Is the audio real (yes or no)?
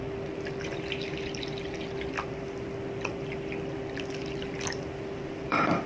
no